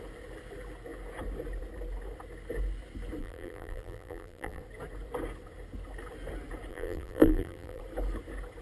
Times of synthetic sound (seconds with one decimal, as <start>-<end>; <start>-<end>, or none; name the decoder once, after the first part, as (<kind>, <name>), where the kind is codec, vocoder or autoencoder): 3.2-4.6 (vocoder, BigVGAN v2); 6.7-7.8

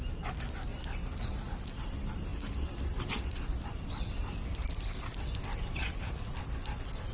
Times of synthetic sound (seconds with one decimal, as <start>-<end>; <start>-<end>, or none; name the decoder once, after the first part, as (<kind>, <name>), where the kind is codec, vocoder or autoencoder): 0.7-1.2 (vocoder, BigVGAN v2); 2.3-3.7

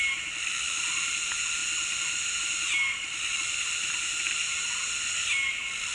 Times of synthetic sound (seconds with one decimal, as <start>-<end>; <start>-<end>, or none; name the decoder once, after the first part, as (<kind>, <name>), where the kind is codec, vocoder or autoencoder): none

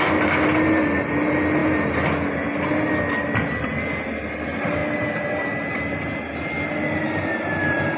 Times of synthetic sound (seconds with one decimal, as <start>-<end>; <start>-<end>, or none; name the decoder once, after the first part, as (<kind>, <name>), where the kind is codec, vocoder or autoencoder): none

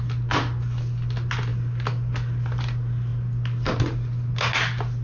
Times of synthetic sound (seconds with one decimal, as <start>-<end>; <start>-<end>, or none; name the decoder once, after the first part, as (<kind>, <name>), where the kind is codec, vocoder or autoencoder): none

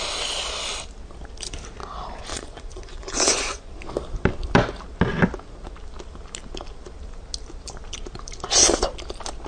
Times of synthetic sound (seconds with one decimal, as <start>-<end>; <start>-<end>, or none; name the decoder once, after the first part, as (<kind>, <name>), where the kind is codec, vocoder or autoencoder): 2.3-3.7 (vocoder, Vocos)